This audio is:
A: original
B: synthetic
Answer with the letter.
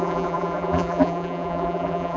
B